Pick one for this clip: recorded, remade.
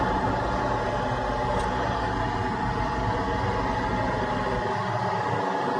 recorded